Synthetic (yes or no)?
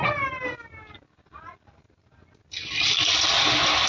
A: no